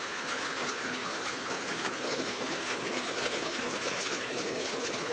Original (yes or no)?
no